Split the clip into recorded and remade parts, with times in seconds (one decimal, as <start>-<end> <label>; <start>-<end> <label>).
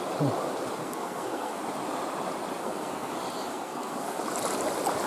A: 0.0-0.8 recorded; 0.8-1.6 remade; 1.6-2.6 recorded; 2.6-3.1 remade; 3.1-3.5 recorded; 3.5-4.2 remade; 4.2-5.1 recorded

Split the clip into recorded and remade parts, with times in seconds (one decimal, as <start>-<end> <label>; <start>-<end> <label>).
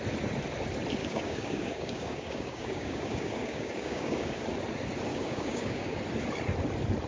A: 0.0-1.0 recorded; 1.0-4.4 remade; 4.4-5.1 recorded; 5.1-6.0 remade; 6.0-7.1 recorded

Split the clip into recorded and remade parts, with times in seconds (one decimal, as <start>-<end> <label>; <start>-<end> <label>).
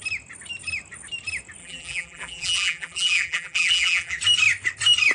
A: 0.0-1.6 recorded; 1.6-4.2 remade; 4.2-5.1 recorded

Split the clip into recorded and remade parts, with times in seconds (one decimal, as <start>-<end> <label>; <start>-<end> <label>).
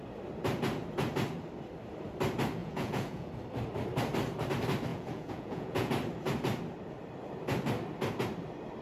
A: 0.0-2.6 recorded; 2.6-3.3 remade; 3.3-4.9 recorded; 4.9-5.9 remade; 5.9-8.8 recorded